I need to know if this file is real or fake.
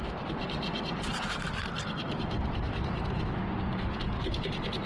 real